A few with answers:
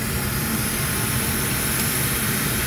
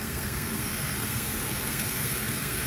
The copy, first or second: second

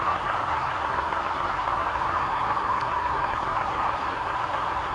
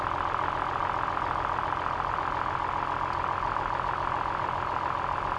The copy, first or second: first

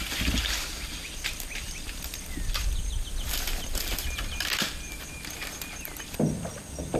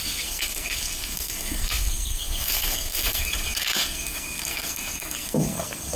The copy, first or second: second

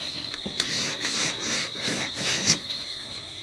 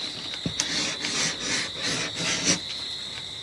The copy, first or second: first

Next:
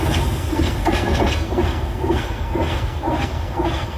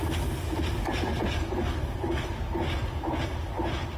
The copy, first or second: first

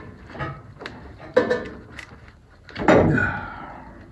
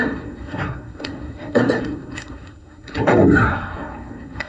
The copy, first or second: second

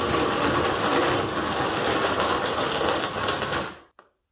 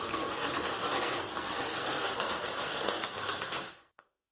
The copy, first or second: second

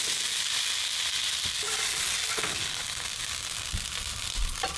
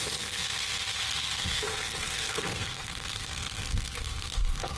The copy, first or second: second